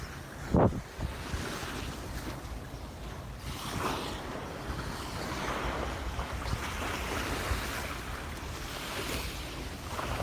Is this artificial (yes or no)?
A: no